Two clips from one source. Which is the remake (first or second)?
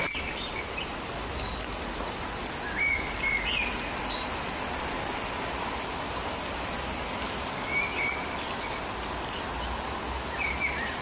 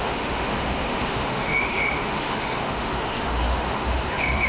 second